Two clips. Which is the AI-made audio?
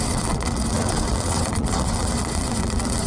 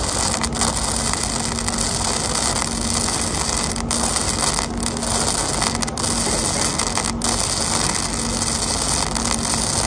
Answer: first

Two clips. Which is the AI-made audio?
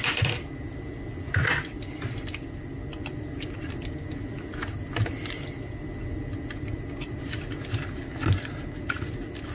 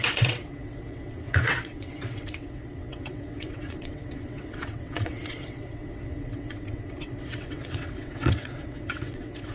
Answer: second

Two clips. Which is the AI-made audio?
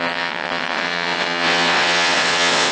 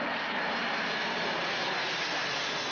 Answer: first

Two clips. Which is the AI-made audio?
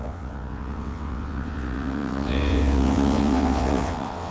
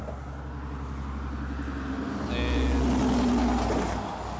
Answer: first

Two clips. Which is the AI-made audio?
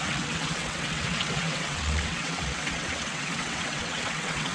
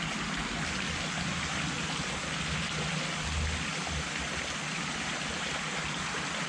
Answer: first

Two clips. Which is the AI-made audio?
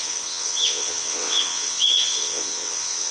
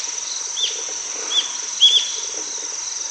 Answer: first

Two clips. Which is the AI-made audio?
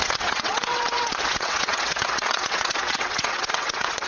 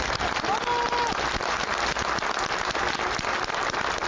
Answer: first